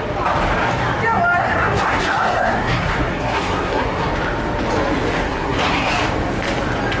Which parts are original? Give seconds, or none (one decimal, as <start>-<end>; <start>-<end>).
0.0-1.4; 4.1-5.2; 5.9-7.0